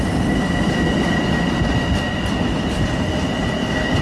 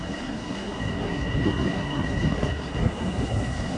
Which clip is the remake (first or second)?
second